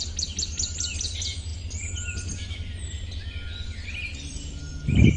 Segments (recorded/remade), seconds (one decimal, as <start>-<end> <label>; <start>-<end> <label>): 0.0-5.2 recorded